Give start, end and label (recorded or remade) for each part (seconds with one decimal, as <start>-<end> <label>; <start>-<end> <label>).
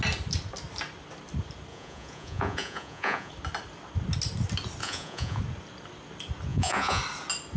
0.0-1.7 recorded; 1.7-3.3 remade; 3.3-4.8 recorded; 4.8-5.4 remade; 5.4-6.5 recorded; 6.5-7.0 remade; 7.0-7.6 recorded